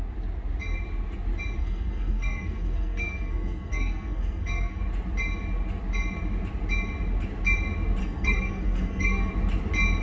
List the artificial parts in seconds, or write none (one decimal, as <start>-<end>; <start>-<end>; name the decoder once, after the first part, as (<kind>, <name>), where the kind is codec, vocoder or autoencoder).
1.6-4.8 (codec, SNAC); 8.0-9.3